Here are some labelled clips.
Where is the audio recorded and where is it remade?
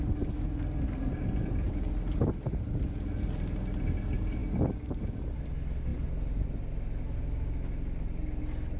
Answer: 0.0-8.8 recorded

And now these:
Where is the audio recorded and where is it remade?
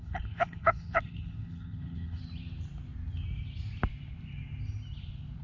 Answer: 0.0-2.2 remade; 2.2-5.4 recorded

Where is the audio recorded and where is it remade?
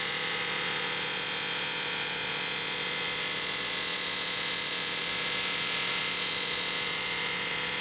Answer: 0.0-7.8 remade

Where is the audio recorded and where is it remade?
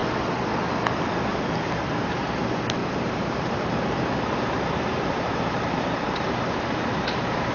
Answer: 0.0-1.3 recorded; 1.3-2.1 remade; 2.1-2.8 recorded; 2.8-7.5 remade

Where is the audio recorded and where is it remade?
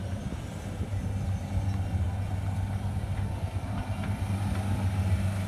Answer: 0.0-5.5 recorded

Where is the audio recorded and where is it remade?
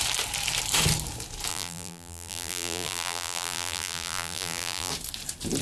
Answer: 0.0-1.5 recorded; 1.5-4.9 remade; 4.9-5.6 recorded